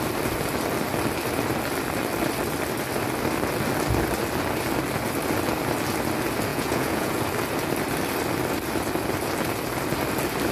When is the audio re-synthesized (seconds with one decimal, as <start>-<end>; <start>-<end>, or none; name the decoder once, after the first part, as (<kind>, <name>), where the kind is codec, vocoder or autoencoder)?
6.5-7.2 (vocoder, Vocos)